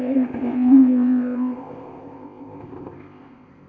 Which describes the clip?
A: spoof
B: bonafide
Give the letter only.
A